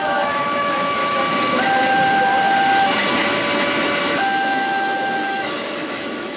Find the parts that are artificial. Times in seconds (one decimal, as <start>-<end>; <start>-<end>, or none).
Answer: 0.0-1.0; 4.2-6.4

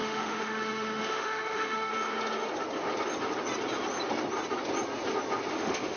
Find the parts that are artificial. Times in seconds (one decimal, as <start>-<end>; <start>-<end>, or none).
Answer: 0.0-1.9; 5.5-6.0